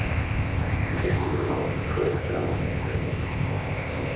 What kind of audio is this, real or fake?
fake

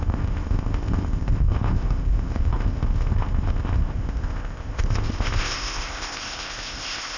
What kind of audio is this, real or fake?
fake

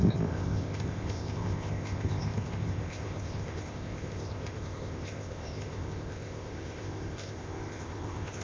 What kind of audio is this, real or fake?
fake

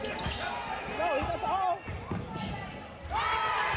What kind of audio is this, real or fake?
real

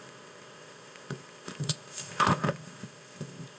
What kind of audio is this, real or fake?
fake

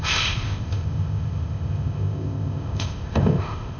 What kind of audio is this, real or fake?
fake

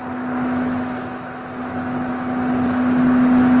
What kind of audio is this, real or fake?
real